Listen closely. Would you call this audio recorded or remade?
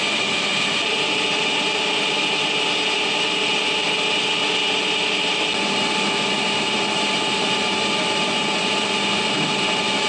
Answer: recorded